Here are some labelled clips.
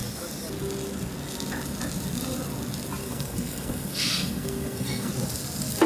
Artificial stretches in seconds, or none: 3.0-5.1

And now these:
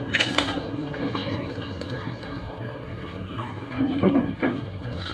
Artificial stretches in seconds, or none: 0.0-5.1